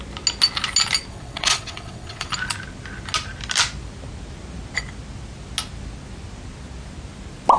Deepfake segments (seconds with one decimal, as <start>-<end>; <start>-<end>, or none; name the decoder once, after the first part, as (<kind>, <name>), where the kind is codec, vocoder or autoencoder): 1.1-2.3 (vocoder, WaveNeXt)